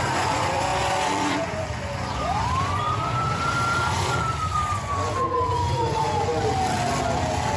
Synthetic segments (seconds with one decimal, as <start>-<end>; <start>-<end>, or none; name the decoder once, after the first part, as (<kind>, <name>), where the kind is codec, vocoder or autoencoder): 0.0-6.3 (vocoder, Vocos)